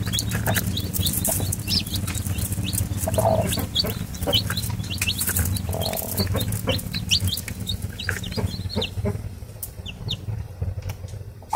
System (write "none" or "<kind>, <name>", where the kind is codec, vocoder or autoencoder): none